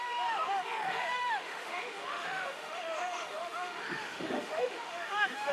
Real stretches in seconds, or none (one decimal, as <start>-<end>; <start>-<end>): none